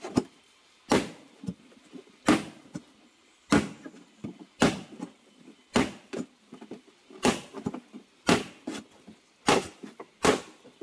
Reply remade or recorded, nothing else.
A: recorded